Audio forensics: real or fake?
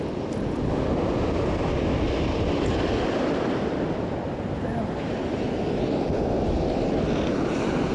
real